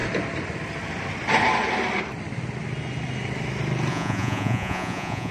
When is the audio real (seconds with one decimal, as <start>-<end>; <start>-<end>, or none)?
0.0-3.9